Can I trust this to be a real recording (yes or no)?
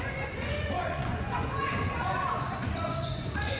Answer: no